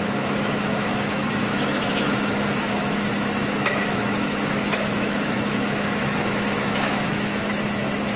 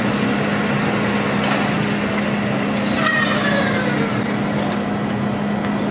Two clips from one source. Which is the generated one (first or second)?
first